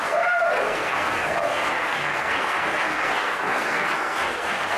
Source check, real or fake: fake